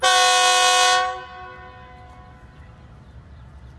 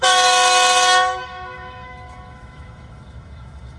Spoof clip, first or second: second